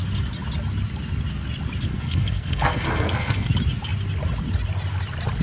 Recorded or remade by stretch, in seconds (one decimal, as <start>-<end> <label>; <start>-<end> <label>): 0.0-1.9 recorded; 1.9-3.5 remade; 3.5-5.4 recorded